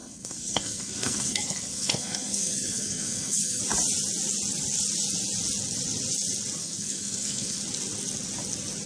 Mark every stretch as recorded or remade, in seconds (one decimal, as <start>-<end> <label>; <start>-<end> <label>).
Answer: 0.0-3.6 remade; 3.6-6.6 recorded; 6.6-7.6 remade; 7.6-8.9 recorded